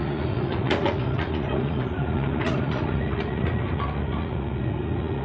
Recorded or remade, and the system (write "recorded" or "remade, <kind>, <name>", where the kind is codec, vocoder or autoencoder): remade, vocoder, Vocos